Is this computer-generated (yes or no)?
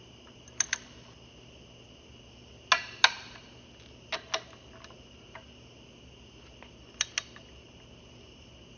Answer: no